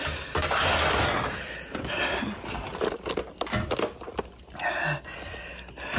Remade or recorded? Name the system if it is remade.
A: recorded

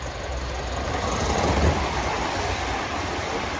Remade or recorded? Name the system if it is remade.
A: recorded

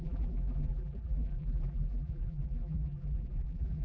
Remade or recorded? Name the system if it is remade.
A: remade, vocoder, BigVGAN v2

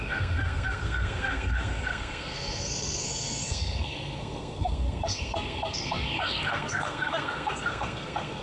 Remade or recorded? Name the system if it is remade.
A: remade, codec, SNAC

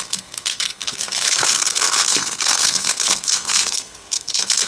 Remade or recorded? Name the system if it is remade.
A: remade, codec, SNAC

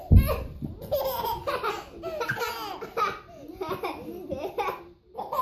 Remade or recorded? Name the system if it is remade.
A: recorded